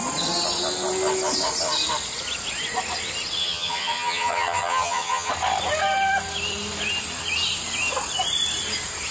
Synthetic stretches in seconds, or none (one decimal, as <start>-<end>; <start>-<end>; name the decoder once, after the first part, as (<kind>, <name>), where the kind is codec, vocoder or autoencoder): 3.4-5.3 (vocoder, HiFi-GAN)